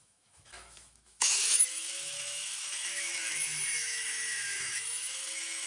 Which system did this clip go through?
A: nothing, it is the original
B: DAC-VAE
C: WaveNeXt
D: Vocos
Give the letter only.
B